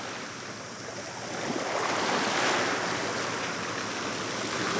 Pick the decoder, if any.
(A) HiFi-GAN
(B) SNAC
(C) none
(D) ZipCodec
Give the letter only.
C